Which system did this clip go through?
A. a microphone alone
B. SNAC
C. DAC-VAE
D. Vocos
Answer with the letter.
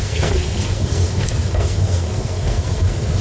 B